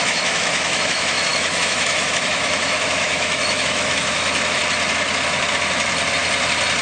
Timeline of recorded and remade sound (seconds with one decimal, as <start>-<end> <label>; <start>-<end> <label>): 0.0-4.6 remade; 4.6-6.8 recorded